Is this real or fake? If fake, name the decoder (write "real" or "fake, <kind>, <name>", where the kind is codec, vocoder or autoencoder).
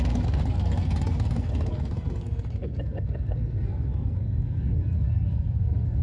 fake, codec, SNAC